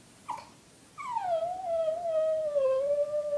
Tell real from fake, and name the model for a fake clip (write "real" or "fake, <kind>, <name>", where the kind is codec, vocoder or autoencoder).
real